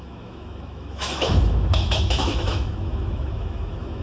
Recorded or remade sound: remade